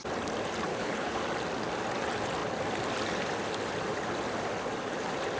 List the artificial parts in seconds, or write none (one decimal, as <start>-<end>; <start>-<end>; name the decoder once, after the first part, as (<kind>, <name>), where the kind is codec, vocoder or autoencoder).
0.7-1.2 (codec, HILCodec)